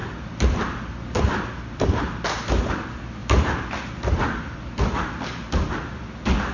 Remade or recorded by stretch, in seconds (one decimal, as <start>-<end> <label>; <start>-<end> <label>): 0.0-2.0 remade; 2.0-6.5 recorded